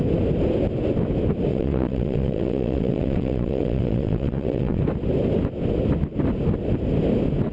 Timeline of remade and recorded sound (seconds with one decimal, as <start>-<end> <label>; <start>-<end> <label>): 0.0-1.5 recorded; 1.5-4.8 remade; 4.8-7.5 recorded